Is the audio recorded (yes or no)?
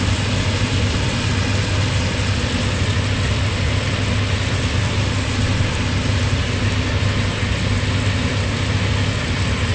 yes